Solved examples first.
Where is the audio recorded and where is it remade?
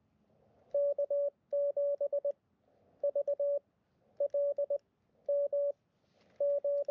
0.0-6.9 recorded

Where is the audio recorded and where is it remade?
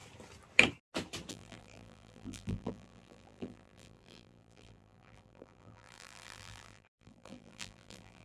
0.0-1.3 recorded; 1.3-8.2 remade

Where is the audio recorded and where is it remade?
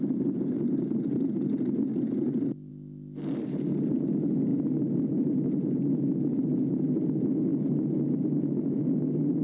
0.0-9.4 recorded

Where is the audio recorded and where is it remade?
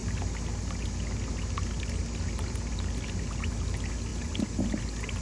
0.0-5.2 recorded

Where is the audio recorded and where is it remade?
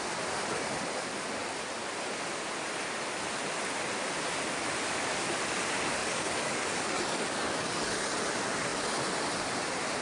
0.0-6.0 recorded; 6.0-8.2 remade; 8.2-10.0 recorded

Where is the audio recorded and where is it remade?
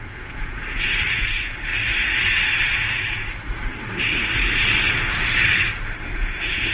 0.0-1.7 remade; 1.7-5.7 recorded; 5.7-6.7 remade